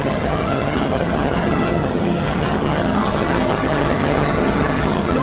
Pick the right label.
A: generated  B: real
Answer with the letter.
A